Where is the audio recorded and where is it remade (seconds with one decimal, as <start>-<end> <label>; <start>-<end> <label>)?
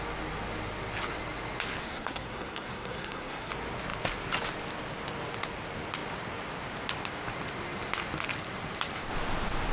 0.0-1.8 recorded; 1.8-3.5 remade; 3.5-9.7 recorded